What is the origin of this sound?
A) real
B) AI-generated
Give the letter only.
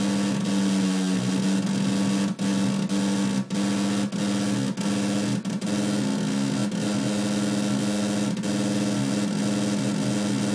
A